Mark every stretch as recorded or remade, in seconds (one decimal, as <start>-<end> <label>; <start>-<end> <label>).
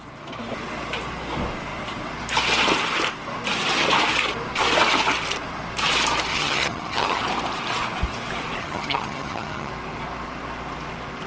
0.0-6.3 recorded; 6.3-7.2 remade; 7.2-8.6 recorded; 8.6-9.7 remade; 9.7-11.3 recorded